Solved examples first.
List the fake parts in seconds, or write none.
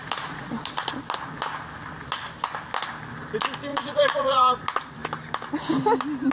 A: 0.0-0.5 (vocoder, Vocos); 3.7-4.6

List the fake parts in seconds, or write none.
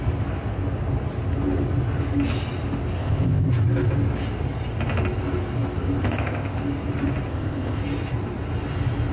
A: 3.0-3.5 (codec, ZipCodec); 6.0-6.6; 7.3-7.8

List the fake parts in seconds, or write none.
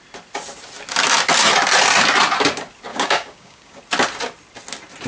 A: 2.9-3.8 (codec, DAC)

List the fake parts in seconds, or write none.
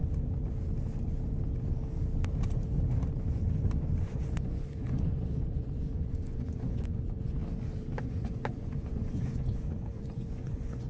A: 4.0-7.4 (vocoder, Vocos); 8.0-10.9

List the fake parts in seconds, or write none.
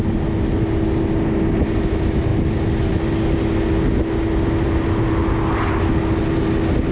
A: none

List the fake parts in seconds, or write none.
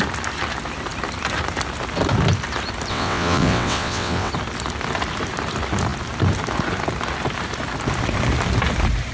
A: 2.9-4.3 (vocoder, WaveNeXt)